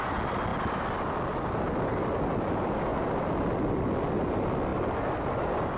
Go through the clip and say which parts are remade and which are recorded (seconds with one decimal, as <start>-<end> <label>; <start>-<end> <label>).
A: 0.0-5.8 recorded